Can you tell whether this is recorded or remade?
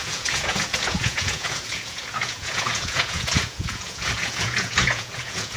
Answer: remade